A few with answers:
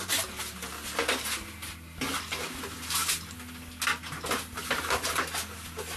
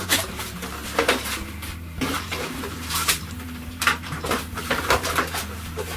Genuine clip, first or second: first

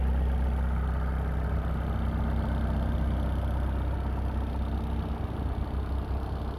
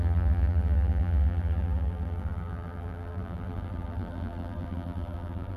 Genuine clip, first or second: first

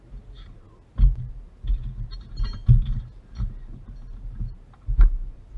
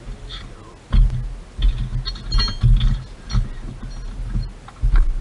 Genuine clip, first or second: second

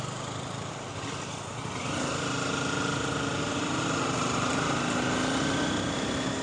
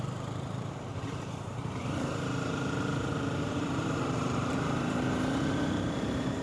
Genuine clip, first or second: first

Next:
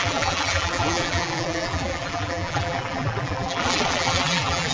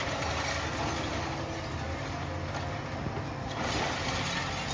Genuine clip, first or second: second